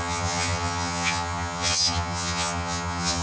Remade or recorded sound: remade